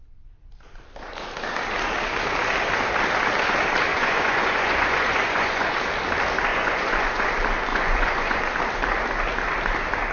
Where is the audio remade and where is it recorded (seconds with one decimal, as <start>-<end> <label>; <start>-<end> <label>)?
0.0-3.9 recorded; 3.9-5.7 remade; 5.7-6.5 recorded; 6.5-7.3 remade; 7.3-7.7 recorded; 7.7-8.4 remade; 8.4-10.1 recorded